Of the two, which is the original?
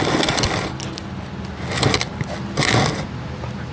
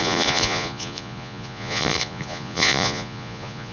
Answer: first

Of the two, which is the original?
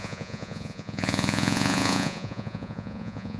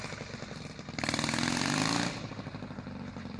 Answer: second